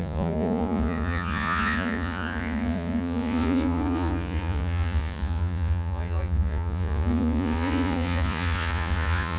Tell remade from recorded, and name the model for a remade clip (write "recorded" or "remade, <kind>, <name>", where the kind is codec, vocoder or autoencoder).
remade, vocoder, Vocos